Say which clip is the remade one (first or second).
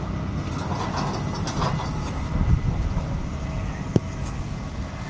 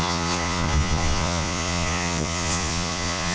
second